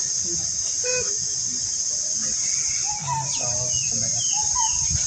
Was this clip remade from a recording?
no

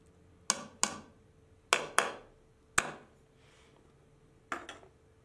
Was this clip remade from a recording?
no